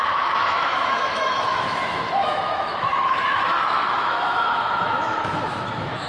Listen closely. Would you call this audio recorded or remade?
remade